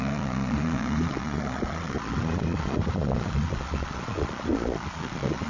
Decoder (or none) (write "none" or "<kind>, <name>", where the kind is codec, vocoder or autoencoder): vocoder, Vocos